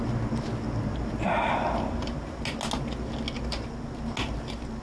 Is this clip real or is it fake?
real